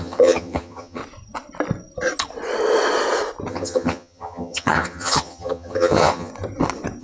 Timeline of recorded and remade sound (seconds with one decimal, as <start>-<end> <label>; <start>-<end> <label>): 0.0-1.0 remade; 1.0-3.5 recorded; 3.5-6.3 remade; 6.3-7.0 recorded